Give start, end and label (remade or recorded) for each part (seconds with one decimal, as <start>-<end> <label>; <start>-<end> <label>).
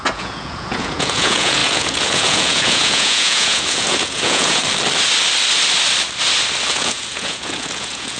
0.0-4.6 remade; 4.6-6.7 recorded; 6.7-8.2 remade